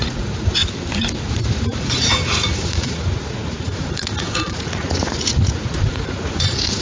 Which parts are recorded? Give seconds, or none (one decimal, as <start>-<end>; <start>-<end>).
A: 0.6-1.3